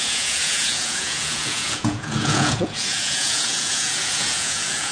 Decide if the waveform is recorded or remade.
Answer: remade